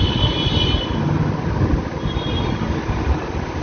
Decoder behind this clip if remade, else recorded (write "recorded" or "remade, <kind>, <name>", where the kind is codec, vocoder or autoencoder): recorded